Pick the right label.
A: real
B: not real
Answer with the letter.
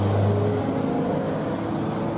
A